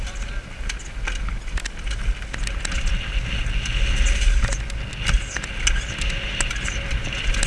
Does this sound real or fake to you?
real